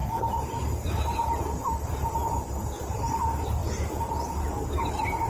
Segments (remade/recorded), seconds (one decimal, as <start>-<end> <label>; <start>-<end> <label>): 0.0-3.2 remade; 3.2-5.3 recorded